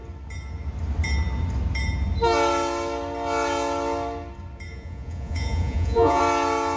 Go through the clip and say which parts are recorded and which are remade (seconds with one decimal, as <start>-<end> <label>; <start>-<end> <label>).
0.0-4.7 recorded; 4.7-6.2 remade; 6.2-6.8 recorded